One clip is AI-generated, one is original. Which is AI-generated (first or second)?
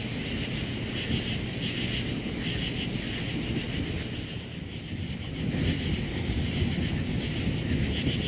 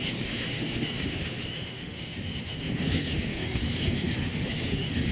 second